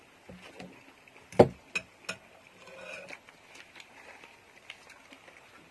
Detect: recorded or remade recorded